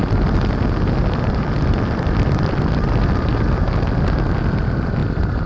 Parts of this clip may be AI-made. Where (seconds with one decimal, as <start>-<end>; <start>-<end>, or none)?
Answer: 0.0-3.3